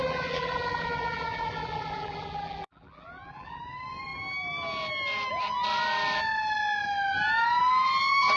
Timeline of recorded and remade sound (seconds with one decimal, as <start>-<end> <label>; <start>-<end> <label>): 0.0-3.6 remade; 3.6-8.4 recorded